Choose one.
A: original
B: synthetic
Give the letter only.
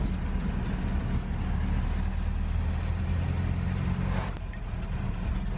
A